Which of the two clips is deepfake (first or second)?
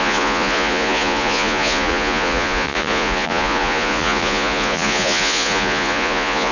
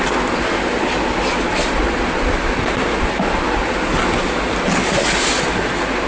first